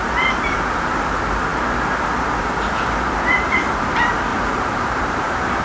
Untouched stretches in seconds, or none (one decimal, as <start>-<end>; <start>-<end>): 0.0-4.3